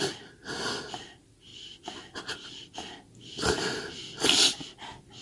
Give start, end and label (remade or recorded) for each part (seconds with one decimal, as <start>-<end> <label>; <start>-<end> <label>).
0.0-5.2 recorded